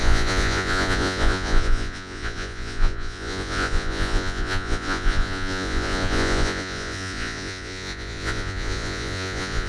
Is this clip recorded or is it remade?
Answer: remade